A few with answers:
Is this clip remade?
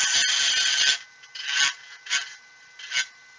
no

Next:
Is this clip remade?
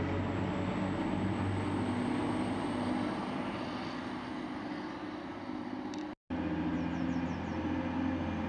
no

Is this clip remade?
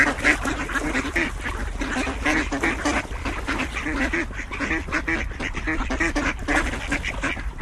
no